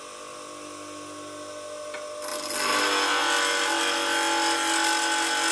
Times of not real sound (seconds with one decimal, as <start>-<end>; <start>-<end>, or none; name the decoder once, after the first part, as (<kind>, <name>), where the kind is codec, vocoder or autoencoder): none

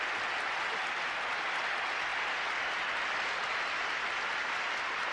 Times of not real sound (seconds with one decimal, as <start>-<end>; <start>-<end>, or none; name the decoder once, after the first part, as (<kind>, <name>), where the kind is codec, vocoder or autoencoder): none

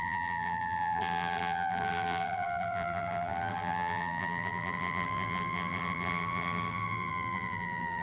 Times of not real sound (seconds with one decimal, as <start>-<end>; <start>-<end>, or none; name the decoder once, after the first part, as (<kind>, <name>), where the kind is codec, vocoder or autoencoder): 0.0-8.0 (vocoder, BigVGAN v2)

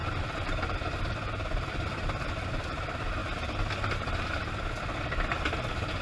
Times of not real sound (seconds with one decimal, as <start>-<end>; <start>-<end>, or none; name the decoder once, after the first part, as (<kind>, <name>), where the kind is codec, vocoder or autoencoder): 0.0-2.2 (vocoder, BigVGAN v2)